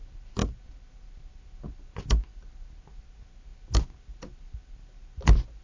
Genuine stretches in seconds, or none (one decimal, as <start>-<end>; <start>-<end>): 0.0-5.6